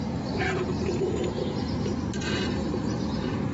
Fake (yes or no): no